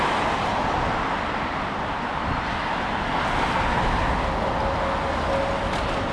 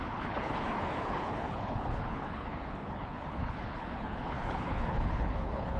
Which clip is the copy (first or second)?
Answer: second